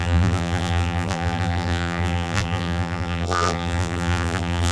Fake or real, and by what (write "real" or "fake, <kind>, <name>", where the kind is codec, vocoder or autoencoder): fake, vocoder, BigVGAN v2